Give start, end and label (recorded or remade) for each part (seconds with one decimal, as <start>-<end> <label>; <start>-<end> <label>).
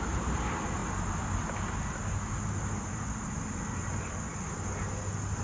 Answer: 0.0-5.4 recorded